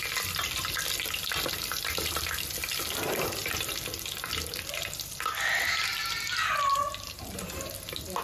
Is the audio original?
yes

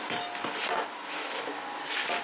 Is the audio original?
yes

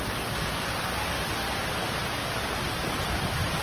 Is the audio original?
no